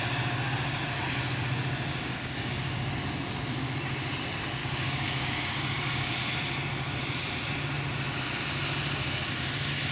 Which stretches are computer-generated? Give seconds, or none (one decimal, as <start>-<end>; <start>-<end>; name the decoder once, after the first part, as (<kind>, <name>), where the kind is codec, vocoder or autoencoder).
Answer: 1.9-2.9 (codec, DAC); 4.6-6.1

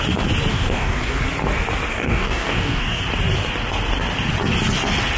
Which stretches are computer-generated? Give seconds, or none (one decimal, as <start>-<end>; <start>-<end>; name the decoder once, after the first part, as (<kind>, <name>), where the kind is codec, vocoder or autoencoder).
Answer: 0.5-1.2 (codec, DAC); 1.9-3.0

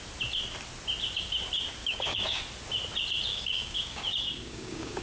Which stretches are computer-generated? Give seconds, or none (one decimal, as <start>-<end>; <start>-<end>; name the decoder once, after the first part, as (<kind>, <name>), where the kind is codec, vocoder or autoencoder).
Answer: 1.8-2.4 (codec, DAC); 3.3-5.0